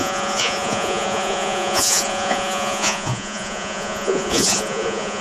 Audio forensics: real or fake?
fake